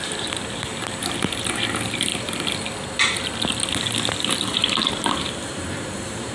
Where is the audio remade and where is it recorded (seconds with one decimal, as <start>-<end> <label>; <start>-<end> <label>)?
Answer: 0.0-2.1 remade; 2.1-4.2 recorded; 4.2-6.3 remade

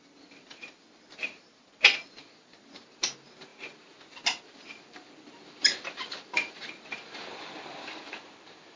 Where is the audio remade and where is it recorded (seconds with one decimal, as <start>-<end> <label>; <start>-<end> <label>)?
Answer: 0.0-3.5 recorded; 3.5-8.1 remade; 8.1-8.8 recorded

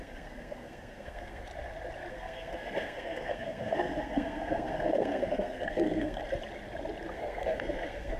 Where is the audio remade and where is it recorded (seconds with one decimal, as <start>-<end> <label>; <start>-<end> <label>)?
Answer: 0.0-1.5 remade; 1.5-2.1 recorded; 2.1-6.2 remade; 6.2-7.1 recorded; 7.1-8.2 remade

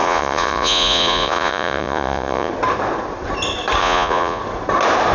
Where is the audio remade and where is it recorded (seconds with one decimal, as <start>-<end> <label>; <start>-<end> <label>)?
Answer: 0.0-2.5 remade; 2.5-3.8 recorded; 3.8-4.4 remade; 4.4-5.1 recorded

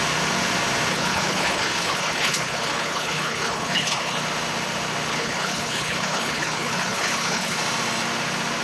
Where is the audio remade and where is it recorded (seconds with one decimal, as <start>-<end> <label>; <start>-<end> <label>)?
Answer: 0.0-0.9 recorded; 0.9-4.2 remade; 4.2-5.1 recorded; 5.1-7.6 remade; 7.6-8.6 recorded